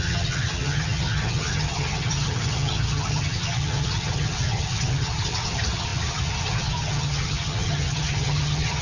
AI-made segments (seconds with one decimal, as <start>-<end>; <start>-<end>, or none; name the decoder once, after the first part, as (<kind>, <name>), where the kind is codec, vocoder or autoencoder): 0.0-8.8 (vocoder, HiFi-GAN)

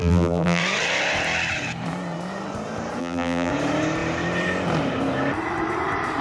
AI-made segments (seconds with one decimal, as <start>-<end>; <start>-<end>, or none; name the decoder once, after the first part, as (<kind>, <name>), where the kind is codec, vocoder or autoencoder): 0.0-0.6 (vocoder, BigVGAN v2); 3.0-3.5

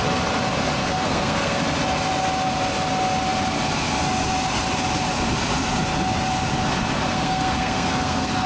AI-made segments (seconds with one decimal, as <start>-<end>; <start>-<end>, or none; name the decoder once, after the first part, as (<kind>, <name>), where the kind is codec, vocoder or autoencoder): 0.8-1.6 (codec, SNAC); 7.1-8.5

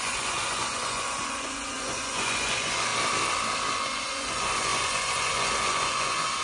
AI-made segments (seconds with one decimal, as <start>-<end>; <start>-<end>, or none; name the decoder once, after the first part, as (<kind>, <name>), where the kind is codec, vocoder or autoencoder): 0.0-2.9 (vocoder, Vocos); 3.8-6.4

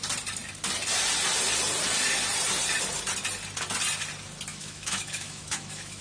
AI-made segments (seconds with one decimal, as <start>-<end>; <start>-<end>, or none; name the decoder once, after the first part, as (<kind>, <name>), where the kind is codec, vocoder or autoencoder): 4.5-6.0 (autoencoder, DAC-VAE)

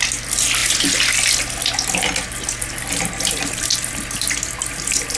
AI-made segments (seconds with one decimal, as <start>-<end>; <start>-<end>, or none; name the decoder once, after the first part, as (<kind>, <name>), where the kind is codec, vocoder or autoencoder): none

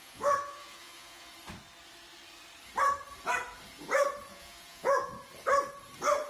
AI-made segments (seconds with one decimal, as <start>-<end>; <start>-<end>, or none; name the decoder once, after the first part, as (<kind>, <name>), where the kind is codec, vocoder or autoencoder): 0.0-1.3 (vocoder, Vocos); 4.3-5.1

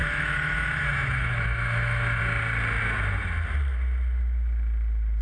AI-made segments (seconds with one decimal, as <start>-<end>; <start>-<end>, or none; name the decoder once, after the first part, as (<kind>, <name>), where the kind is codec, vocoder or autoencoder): 0.0-2.2 (autoencoder, DAC-VAE)